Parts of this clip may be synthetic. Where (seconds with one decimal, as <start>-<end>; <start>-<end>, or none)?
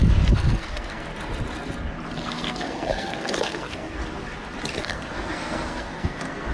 0.0-1.1; 2.1-4.0; 4.7-6.5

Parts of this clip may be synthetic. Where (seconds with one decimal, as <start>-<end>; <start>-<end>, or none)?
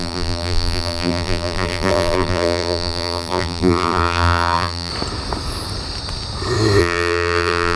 0.0-4.9; 6.8-7.8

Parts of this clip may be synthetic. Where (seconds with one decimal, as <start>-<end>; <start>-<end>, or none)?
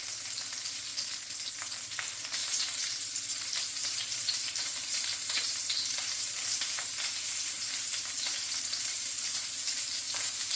0.0-0.9; 1.5-10.6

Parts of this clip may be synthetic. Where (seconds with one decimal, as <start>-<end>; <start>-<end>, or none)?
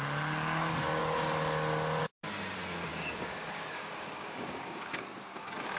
2.9-5.8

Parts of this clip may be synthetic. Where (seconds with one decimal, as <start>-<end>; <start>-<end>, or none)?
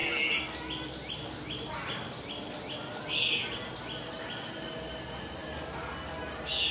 none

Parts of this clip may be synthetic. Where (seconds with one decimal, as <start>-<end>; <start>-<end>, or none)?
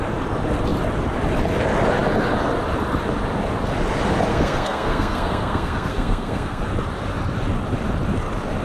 4.3-6.6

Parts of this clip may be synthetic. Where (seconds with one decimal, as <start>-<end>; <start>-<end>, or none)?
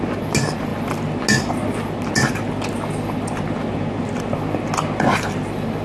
none